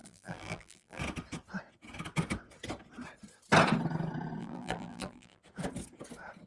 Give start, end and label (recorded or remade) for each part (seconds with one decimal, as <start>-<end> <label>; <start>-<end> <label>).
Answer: 0.0-1.0 remade; 1.0-4.4 recorded; 4.4-5.4 remade; 5.4-6.5 recorded